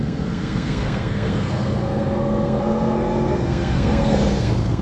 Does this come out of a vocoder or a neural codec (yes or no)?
yes